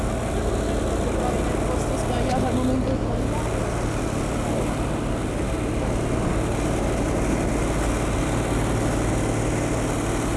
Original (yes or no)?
yes